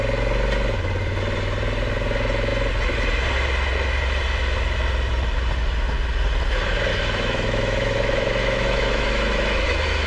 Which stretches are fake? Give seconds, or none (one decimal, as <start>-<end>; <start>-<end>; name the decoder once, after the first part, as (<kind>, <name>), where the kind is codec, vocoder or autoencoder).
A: 6.9-10.1 (autoencoder, DAC-VAE)